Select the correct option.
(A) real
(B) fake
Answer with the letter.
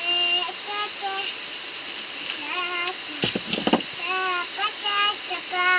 A